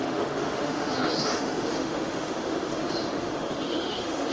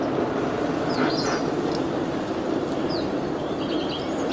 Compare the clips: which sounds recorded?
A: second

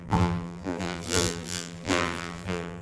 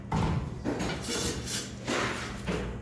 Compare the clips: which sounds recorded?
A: second